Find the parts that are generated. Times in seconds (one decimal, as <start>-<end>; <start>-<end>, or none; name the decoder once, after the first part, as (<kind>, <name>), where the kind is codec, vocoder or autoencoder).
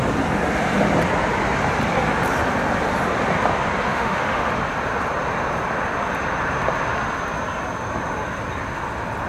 3.9-4.5 (autoencoder, DAC-VAE)